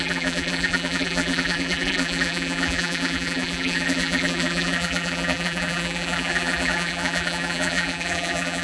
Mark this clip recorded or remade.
remade